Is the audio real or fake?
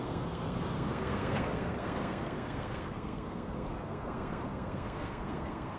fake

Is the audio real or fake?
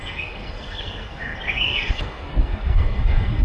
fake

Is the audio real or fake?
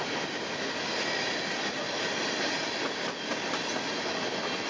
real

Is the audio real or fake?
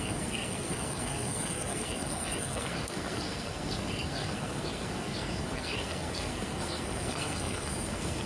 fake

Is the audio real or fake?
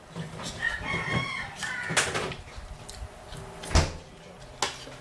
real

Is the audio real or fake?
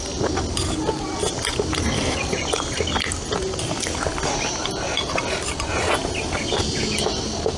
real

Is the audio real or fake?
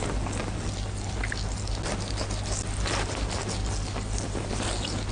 real